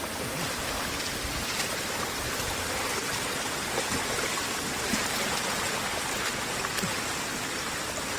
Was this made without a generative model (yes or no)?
yes